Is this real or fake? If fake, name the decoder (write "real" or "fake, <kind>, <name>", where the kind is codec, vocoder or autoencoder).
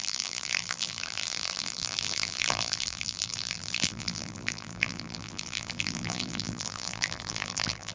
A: fake, vocoder, BigVGAN v2